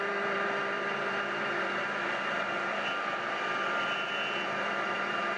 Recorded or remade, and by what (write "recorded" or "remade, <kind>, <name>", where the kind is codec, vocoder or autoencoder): remade, vocoder, BigVGAN v2